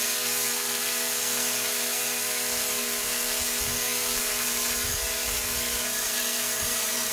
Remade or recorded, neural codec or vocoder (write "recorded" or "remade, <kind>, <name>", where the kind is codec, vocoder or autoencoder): remade, codec, SNAC